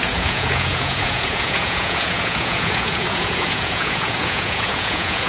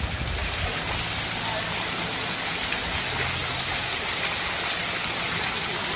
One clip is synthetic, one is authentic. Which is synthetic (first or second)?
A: first